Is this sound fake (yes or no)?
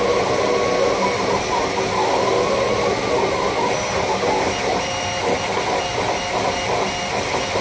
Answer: no